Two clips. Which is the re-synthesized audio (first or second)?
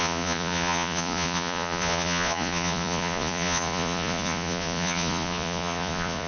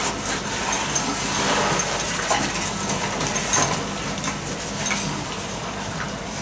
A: first